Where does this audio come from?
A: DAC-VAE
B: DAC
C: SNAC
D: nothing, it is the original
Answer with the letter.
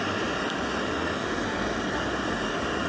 D